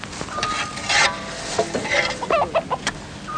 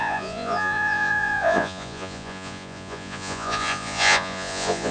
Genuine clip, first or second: first